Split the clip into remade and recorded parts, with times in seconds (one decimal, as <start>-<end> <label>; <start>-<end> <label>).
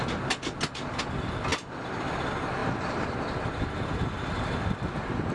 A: 0.0-5.3 recorded